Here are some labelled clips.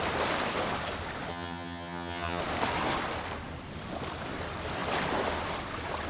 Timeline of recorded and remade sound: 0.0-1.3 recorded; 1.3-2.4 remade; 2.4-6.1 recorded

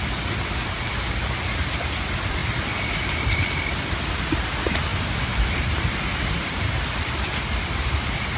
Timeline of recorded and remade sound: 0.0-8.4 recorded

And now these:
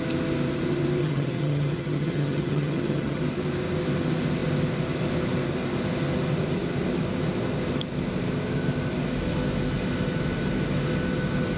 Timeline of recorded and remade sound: 0.0-1.0 recorded; 1.0-3.2 remade; 3.2-11.6 recorded